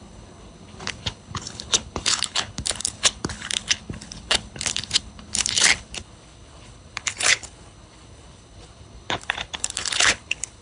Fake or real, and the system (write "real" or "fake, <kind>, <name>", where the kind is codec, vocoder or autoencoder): fake, codec, HILCodec